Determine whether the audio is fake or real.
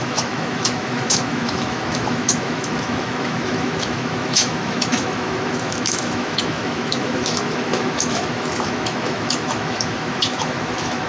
fake